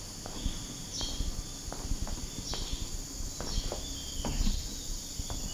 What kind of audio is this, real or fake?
real